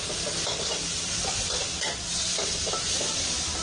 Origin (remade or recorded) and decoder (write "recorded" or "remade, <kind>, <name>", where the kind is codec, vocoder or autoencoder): remade, vocoder, BigVGAN v2